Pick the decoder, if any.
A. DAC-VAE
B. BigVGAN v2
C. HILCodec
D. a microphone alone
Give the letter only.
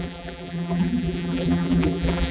B